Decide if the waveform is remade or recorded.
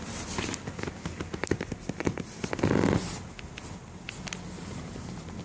recorded